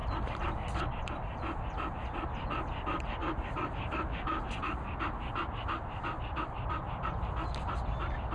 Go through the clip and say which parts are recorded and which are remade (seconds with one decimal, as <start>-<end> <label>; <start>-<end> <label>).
0.0-1.0 remade; 1.0-8.3 recorded